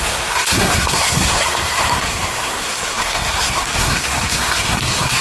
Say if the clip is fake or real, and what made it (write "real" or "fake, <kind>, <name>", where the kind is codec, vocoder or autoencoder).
fake, codec, SNAC